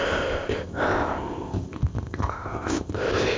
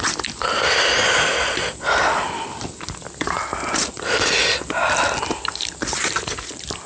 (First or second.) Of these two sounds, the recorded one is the second